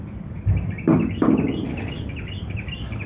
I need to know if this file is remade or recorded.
recorded